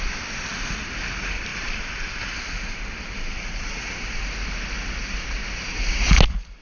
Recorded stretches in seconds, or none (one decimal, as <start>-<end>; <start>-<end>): 0.0-0.5; 1.0-1.5; 3.6-6.6